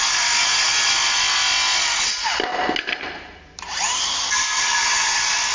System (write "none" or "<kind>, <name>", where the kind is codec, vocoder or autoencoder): none